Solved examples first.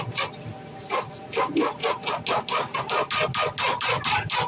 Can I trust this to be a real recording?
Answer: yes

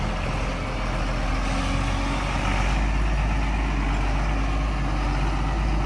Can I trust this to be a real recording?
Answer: yes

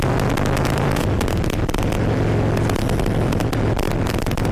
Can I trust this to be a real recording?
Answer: no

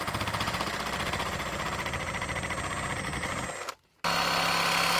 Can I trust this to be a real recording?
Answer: yes